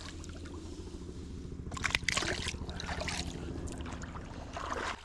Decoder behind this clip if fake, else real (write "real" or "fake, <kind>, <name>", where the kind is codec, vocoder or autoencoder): real